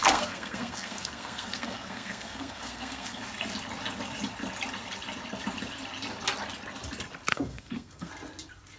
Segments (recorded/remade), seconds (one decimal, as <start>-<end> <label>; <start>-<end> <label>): 0.0-3.2 remade; 3.2-7.3 recorded; 7.3-8.1 remade; 8.1-8.8 recorded